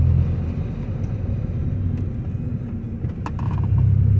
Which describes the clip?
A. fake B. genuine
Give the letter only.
B